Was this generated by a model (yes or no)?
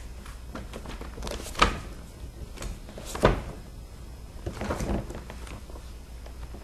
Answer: no